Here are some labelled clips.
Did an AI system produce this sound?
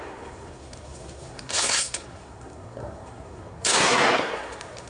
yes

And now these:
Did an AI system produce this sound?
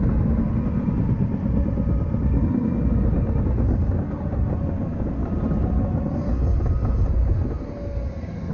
no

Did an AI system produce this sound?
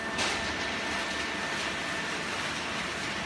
no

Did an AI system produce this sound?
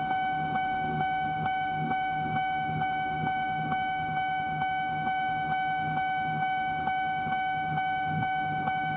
yes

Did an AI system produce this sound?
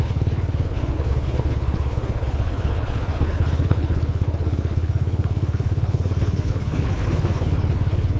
yes